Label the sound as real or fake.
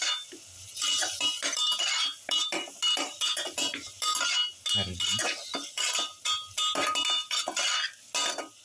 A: real